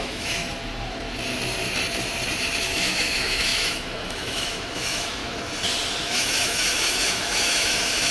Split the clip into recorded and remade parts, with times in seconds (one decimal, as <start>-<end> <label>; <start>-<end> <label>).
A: 0.0-0.4 remade; 0.4-2.6 recorded; 2.6-5.2 remade; 5.2-6.0 recorded; 6.0-8.1 remade